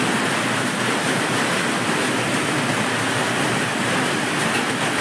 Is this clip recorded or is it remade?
recorded